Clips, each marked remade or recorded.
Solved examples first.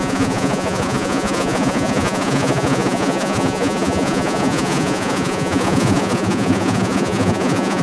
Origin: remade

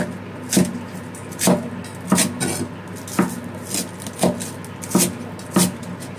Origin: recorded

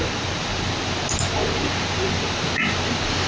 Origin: recorded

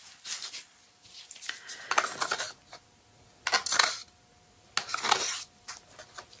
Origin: recorded